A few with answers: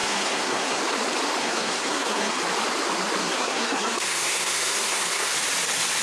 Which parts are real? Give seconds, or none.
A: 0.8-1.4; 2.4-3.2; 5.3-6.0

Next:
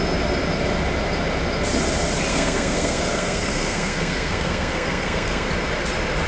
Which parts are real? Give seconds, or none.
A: 0.0-2.3; 5.5-6.3

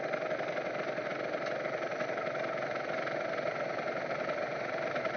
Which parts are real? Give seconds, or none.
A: 0.0-5.2

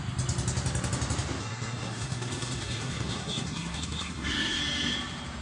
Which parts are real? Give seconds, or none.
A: 0.0-1.4; 4.6-5.4

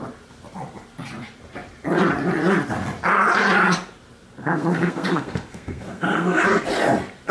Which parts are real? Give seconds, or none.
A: 0.0-4.4; 6.4-7.3

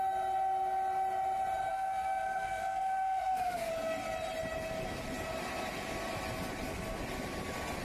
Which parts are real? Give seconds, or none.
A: 0.0-1.7; 3.7-7.8